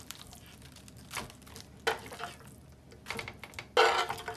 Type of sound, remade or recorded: recorded